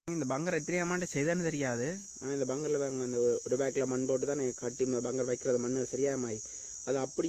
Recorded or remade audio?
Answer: remade